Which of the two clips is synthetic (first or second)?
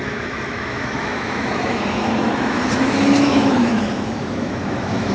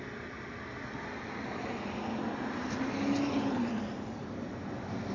first